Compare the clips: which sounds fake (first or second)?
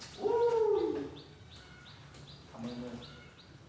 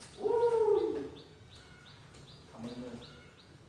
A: second